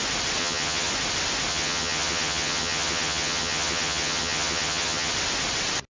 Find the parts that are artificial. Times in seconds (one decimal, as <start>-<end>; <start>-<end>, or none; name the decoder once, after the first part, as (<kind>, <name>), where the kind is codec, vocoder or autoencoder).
0.4-0.9 (vocoder, HiFi-GAN); 1.5-5.1